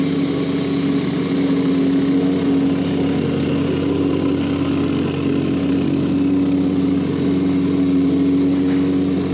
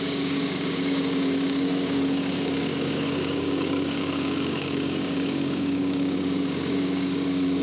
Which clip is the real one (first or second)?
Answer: first